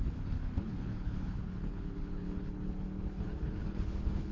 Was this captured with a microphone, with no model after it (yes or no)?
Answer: no